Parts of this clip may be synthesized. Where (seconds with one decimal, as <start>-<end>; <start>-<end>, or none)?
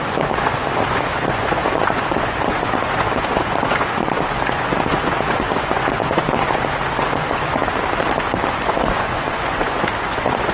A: 0.0-7.6; 8.5-10.5